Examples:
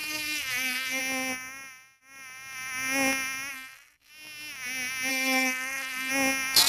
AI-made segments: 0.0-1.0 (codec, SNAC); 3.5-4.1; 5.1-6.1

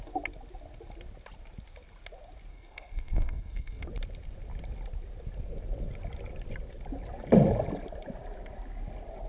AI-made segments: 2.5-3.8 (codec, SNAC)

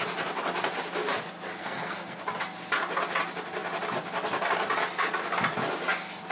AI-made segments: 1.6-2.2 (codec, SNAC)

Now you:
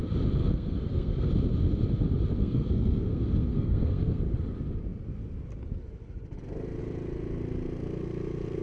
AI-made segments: 0.4-1.3 (codec, SNAC); 2.4-4.2